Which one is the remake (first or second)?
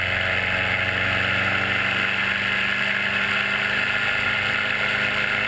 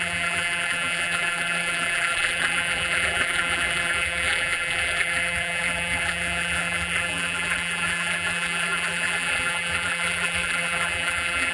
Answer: second